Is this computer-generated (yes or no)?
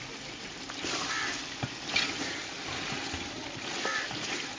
no